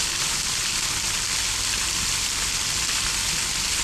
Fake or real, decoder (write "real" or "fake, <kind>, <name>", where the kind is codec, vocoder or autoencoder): real